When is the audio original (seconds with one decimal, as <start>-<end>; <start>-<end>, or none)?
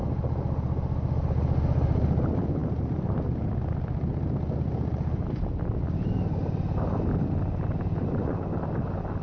0.0-9.2